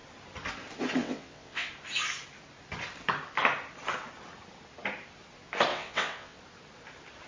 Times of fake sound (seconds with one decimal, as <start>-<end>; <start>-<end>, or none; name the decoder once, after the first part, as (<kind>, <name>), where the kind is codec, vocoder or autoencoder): 1.0-1.7 (vocoder, WaveNeXt); 5.7-6.4